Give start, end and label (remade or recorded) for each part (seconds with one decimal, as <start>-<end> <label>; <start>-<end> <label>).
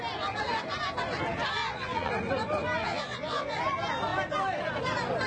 0.0-1.6 recorded; 1.6-2.1 remade; 2.1-2.8 recorded; 2.8-3.6 remade; 3.6-5.3 recorded